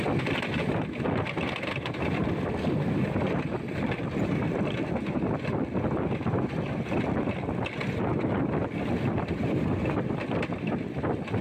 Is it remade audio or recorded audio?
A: remade